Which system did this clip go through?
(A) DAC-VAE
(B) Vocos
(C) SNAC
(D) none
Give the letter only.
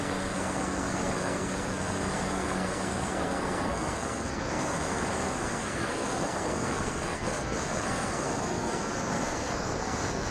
C